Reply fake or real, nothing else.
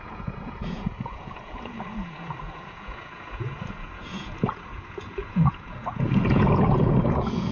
fake